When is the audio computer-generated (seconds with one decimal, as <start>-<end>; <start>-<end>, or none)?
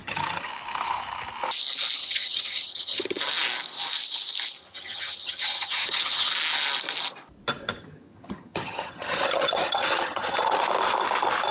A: 0.0-0.5; 2.0-3.2; 4.6-6.3; 7.8-10.6